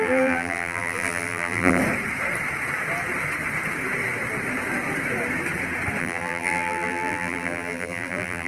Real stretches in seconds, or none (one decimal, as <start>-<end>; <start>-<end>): 1.8-6.0